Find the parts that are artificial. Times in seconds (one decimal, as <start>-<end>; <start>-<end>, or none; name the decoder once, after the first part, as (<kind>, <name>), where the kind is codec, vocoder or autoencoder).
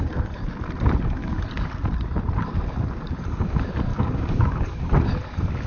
1.2-1.7 (codec, DAC); 3.9-4.8